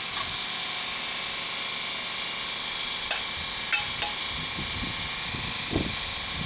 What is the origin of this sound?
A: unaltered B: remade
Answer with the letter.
A